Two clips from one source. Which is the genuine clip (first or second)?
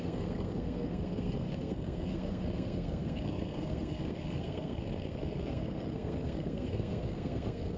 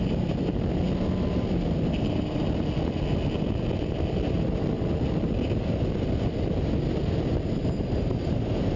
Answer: second